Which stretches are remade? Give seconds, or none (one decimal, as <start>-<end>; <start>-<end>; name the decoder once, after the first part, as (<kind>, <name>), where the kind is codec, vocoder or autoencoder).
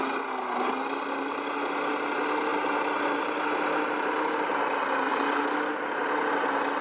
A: none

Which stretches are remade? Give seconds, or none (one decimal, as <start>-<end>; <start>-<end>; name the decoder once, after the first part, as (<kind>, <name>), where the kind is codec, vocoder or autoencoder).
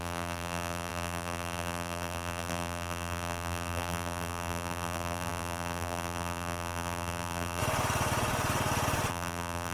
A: 0.0-7.6 (vocoder, BigVGAN v2); 9.1-9.7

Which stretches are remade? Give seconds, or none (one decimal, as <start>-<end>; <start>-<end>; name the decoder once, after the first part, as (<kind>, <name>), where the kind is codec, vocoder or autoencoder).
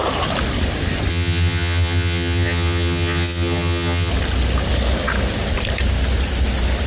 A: 1.1-4.1 (vocoder, HiFi-GAN)